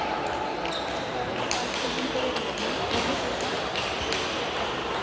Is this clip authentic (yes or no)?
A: yes